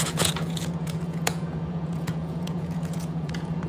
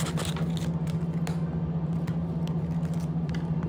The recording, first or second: second